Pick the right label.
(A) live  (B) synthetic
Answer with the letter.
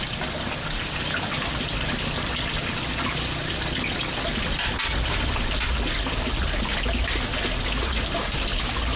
A